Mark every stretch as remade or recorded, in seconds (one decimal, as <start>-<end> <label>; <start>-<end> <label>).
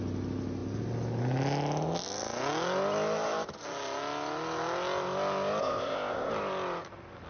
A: 0.0-5.6 recorded; 5.6-6.3 remade; 6.3-7.3 recorded